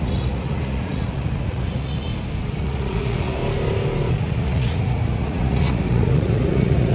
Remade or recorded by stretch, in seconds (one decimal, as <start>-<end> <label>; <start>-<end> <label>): 0.0-2.1 remade; 2.1-2.6 recorded; 2.6-3.4 remade; 3.4-4.1 recorded; 4.1-6.9 remade